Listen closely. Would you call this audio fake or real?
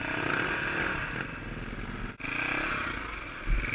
real